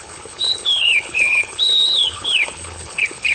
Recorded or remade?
remade